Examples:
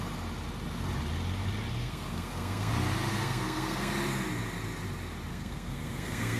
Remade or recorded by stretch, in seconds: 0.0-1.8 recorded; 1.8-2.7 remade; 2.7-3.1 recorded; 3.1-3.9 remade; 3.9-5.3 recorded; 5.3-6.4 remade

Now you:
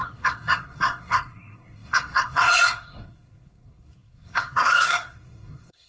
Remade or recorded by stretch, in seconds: 0.0-5.9 remade